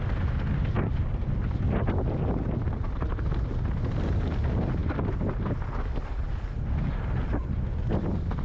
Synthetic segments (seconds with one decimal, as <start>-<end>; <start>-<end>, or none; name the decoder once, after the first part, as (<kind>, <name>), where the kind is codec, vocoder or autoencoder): none